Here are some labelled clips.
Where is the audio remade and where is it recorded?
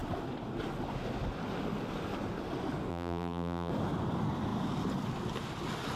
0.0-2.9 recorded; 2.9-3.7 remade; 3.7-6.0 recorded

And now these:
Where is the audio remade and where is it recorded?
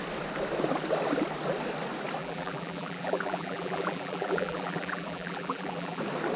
0.0-2.2 recorded; 2.2-6.0 remade; 6.0-6.4 recorded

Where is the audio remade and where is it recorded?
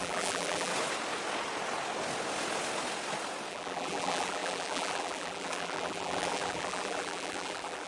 0.0-0.7 remade; 0.7-3.5 recorded; 3.5-7.9 remade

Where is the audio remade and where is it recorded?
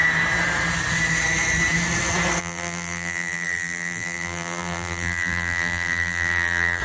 0.0-2.4 recorded; 2.4-6.8 remade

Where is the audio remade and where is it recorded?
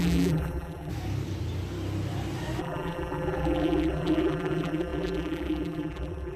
0.0-0.9 remade; 0.9-2.6 recorded; 2.6-6.4 remade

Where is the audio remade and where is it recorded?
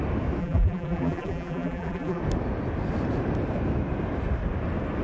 0.0-0.4 recorded; 0.4-2.2 remade; 2.2-5.0 recorded